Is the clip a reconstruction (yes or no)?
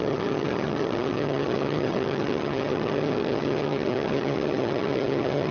yes